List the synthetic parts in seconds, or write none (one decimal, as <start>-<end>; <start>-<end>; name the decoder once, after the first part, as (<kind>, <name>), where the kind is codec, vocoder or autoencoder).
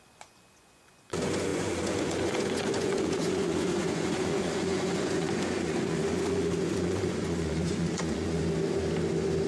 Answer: 0.0-8.4 (vocoder, Vocos)